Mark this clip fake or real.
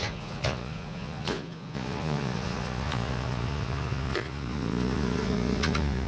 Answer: fake